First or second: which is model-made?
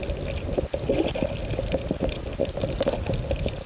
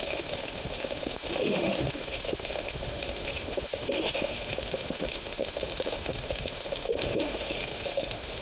second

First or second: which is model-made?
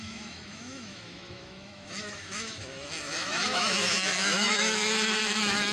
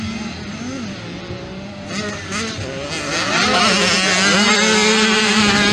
first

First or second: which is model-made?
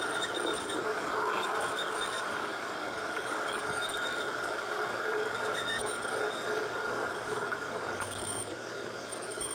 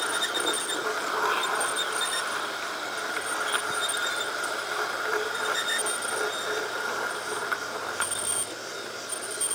first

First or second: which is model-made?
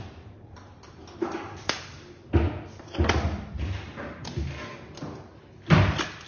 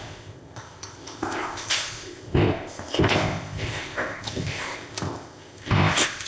second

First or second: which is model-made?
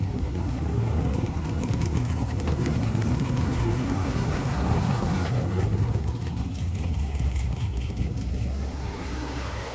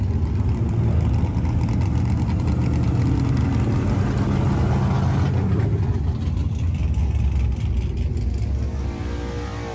first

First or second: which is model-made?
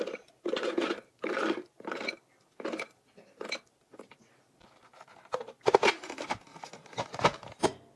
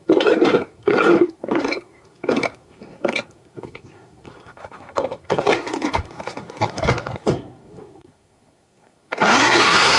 second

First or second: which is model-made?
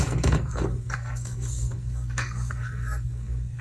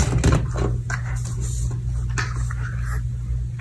first